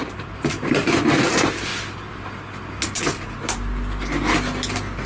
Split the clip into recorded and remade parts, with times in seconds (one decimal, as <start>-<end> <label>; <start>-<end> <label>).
0.0-1.7 remade; 1.7-5.1 recorded